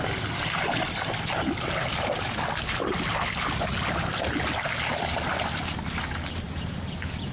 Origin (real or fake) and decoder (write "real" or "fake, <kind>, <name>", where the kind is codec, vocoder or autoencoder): real